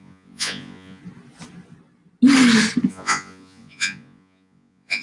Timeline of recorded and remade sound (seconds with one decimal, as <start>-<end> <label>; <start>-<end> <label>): 0.0-1.0 remade; 1.0-2.9 recorded; 2.9-5.0 remade